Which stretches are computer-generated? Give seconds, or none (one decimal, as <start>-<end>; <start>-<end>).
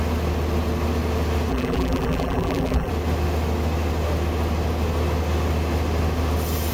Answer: 1.5-2.9